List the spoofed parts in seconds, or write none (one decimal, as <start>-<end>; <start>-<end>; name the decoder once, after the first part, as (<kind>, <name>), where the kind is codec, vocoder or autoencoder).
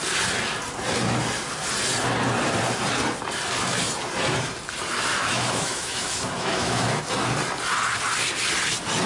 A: 5.1-7.0 (autoencoder, DAC-VAE)